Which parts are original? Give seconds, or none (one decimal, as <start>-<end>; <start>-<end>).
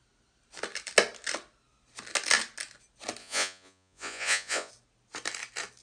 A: 0.0-3.2; 4.7-5.8